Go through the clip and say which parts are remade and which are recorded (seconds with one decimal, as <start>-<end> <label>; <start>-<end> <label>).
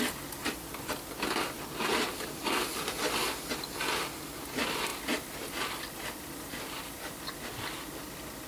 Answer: 0.0-0.4 recorded; 0.4-1.1 remade; 1.1-4.9 recorded; 4.9-7.2 remade; 7.2-8.5 recorded